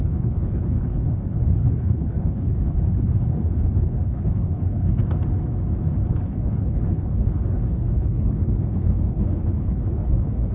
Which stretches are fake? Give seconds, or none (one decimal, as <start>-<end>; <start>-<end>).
0.0-5.0; 6.1-10.5